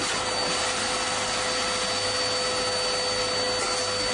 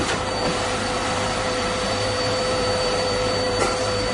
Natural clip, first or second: first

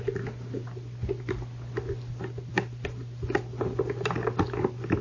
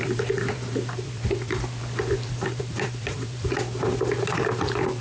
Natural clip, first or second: first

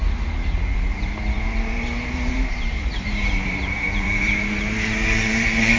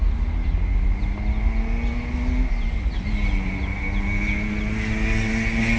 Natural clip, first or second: second